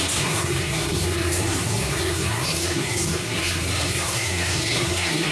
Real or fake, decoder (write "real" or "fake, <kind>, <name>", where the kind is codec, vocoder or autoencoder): fake, codec, SNAC